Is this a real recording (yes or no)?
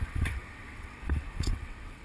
no